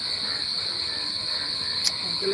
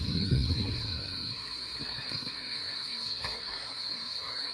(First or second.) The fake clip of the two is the second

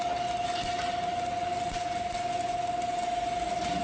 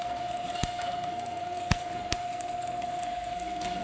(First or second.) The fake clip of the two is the second